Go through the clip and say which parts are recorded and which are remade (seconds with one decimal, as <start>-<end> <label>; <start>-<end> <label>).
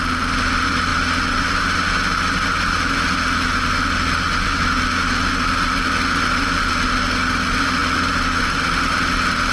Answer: 0.0-9.5 recorded